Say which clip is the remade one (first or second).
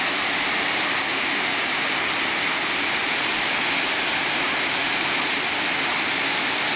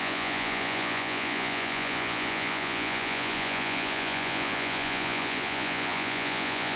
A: second